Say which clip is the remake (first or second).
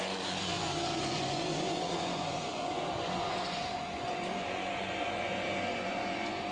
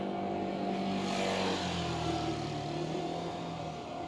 first